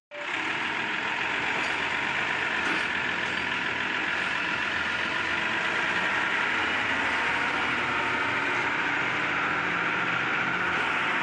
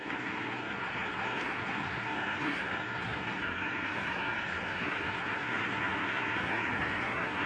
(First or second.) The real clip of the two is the first